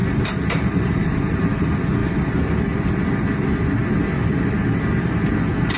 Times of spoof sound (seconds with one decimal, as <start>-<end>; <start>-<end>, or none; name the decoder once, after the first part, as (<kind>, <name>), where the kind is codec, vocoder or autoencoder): 0.0-1.4 (vocoder, BigVGAN v2)